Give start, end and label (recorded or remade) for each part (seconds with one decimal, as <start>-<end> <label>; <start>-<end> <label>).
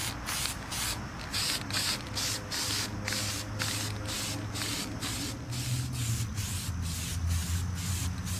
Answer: 0.0-8.4 recorded